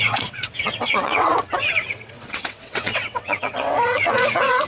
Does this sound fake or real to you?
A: fake